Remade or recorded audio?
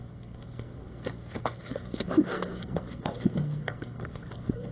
remade